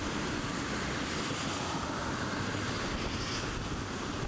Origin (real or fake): real